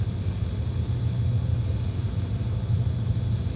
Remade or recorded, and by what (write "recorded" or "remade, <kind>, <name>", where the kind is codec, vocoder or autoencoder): recorded